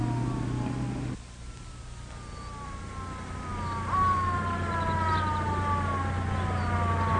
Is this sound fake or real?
real